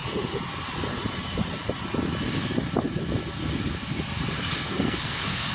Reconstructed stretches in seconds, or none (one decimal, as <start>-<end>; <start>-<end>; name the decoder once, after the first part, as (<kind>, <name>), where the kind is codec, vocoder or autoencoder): 4.4-5.5 (codec, SNAC)